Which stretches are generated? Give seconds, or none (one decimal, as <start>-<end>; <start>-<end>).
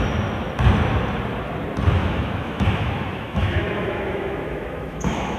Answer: 2.0-5.4